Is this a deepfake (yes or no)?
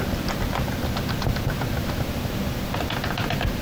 no